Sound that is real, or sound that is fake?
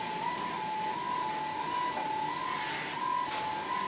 real